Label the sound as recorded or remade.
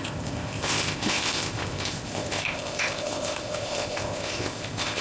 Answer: remade